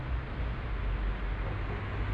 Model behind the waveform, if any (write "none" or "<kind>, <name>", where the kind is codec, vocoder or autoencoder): none